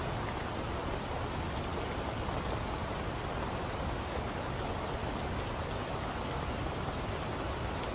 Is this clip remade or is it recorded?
recorded